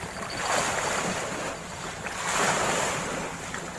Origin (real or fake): fake